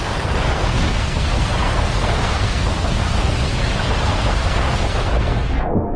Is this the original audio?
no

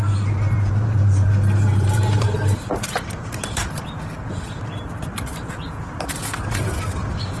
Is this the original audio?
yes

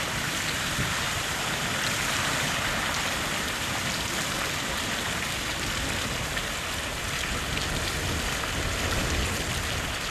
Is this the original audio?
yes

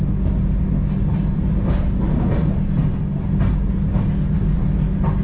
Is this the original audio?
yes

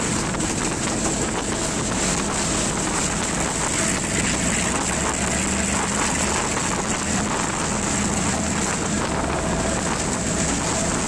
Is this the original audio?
yes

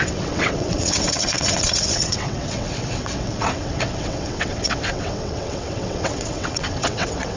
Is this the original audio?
no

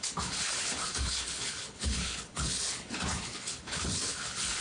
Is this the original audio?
no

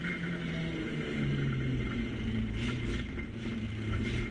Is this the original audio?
yes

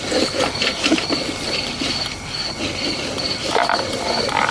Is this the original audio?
yes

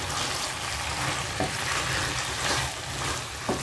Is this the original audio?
yes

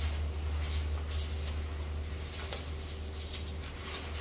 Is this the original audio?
yes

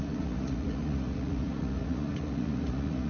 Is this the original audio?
no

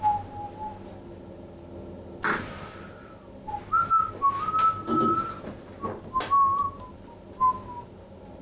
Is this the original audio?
yes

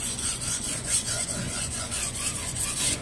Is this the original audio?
no